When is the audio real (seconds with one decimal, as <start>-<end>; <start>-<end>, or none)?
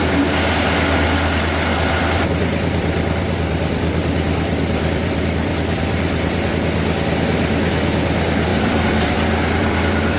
0.0-1.7; 6.5-8.5